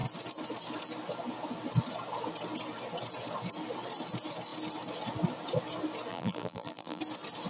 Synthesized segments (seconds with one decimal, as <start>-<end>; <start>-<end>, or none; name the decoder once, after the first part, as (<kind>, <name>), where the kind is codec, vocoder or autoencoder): 6.1-7.0 (vocoder, BigVGAN v2)